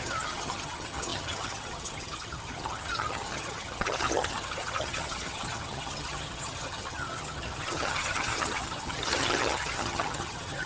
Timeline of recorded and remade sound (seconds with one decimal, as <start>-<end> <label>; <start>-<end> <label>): 0.0-10.7 remade